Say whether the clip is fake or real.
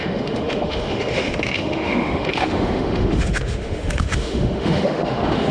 fake